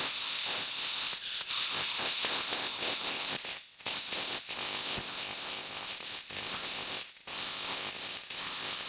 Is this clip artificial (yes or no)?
yes